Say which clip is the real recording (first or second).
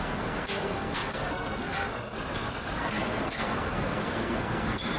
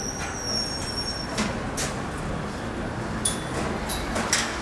second